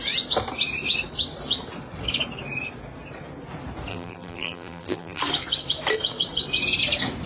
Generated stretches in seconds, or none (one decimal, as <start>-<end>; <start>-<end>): 3.9-5.2